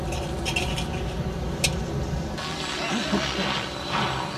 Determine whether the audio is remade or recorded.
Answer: recorded